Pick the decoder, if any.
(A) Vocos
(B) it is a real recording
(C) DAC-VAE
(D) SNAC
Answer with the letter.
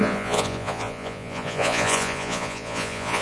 A